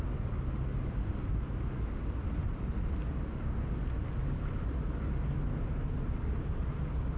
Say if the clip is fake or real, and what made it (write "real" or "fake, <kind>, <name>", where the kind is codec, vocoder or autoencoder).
real